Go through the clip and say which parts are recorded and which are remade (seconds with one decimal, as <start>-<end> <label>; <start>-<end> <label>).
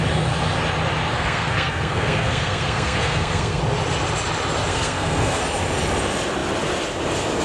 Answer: 0.0-1.1 recorded; 1.1-3.6 remade; 3.6-4.7 recorded; 4.7-5.4 remade; 5.4-7.4 recorded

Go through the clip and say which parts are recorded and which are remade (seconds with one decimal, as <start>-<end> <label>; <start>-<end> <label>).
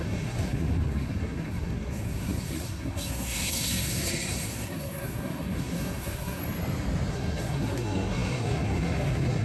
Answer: 0.0-6.4 remade; 6.4-7.1 recorded; 7.1-9.4 remade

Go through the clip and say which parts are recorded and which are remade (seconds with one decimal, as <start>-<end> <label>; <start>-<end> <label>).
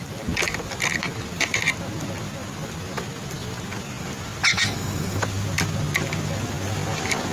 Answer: 0.0-4.5 recorded; 4.5-5.2 remade; 5.2-7.3 recorded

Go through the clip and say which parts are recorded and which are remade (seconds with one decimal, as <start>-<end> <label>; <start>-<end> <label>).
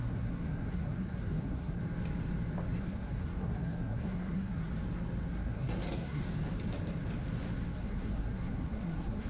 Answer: 0.0-1.8 remade; 1.8-2.8 recorded; 2.8-4.7 remade; 4.7-5.3 recorded; 5.3-6.2 remade; 6.2-7.8 recorded; 7.8-9.3 remade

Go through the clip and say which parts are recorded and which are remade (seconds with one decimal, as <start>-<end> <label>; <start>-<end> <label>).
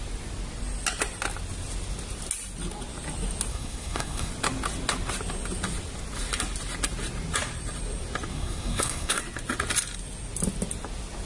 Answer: 0.0-3.5 recorded; 3.5-4.3 remade; 4.3-8.3 recorded; 8.3-9.2 remade; 9.2-11.3 recorded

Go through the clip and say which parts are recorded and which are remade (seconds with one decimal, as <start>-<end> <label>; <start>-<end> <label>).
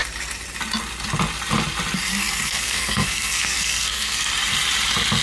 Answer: 0.0-2.1 recorded; 2.1-4.3 remade; 4.3-5.2 recorded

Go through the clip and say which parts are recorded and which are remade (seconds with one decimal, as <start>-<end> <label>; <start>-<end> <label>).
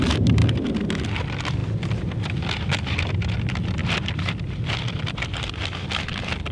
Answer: 0.0-6.5 recorded